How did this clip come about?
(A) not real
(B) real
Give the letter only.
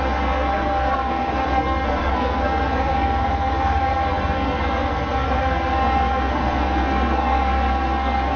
A